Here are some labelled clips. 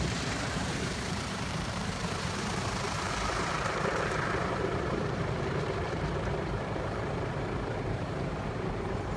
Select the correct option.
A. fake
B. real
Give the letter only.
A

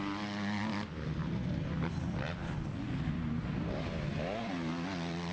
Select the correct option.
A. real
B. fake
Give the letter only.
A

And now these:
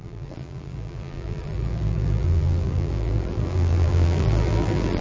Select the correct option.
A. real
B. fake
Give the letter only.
B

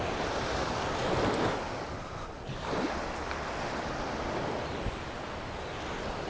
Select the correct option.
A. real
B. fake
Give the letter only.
A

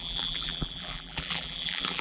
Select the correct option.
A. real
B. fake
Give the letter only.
B